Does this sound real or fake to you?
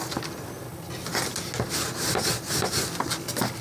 real